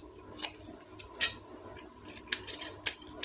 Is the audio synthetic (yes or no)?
no